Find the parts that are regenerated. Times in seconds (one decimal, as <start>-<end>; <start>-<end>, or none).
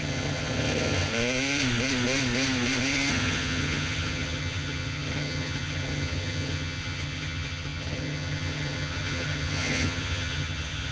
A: 0.0-1.1; 3.1-10.9